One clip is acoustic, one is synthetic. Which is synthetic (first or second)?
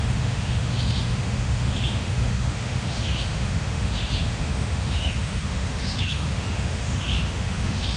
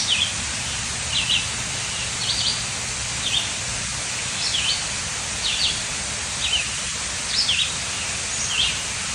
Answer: first